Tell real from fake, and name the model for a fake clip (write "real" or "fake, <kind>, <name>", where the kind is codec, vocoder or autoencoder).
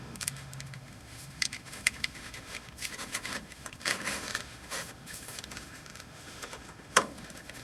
fake, autoencoder, DAC-VAE